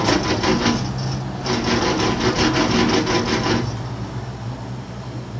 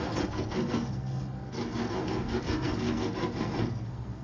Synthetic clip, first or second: second